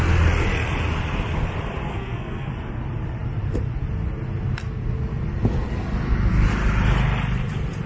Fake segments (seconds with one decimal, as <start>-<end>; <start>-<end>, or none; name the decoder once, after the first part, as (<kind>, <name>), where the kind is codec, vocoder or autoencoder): 1.9-2.5 (codec, SNAC)